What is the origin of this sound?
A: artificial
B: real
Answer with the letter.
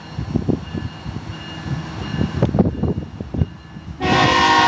B